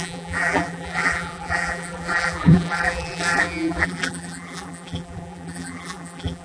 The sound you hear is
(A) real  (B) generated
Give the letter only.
B